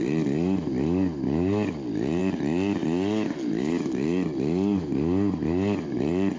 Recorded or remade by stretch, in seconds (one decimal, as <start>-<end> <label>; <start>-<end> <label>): 0.0-6.4 recorded